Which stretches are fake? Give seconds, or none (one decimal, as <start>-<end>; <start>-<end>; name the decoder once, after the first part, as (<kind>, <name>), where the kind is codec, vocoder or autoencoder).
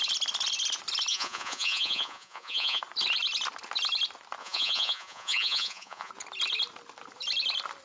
1.1-2.8 (vocoder, Vocos); 4.4-6.1